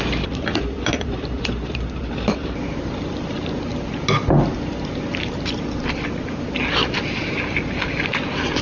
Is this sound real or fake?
real